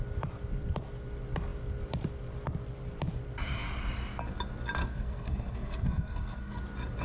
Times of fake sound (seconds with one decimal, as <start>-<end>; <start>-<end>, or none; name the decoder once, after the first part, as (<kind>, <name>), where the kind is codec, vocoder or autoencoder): 4.8-6.6 (codec, SNAC)